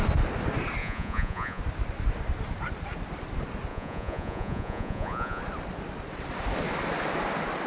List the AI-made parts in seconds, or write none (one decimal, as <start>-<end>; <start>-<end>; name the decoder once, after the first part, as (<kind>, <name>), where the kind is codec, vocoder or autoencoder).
0.8-1.6 (vocoder, Vocos); 3.7-5.4